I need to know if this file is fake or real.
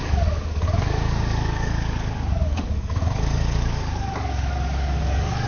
fake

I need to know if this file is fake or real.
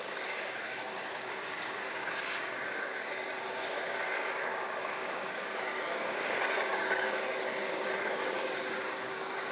fake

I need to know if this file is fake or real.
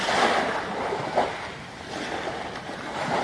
real